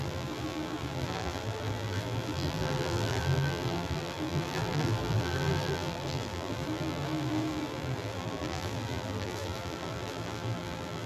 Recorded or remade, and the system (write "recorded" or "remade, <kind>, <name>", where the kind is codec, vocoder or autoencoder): remade, vocoder, BigVGAN v2